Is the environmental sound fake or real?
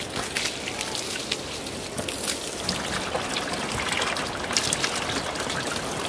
real